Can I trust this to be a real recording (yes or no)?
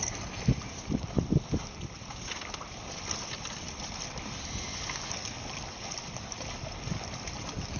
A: yes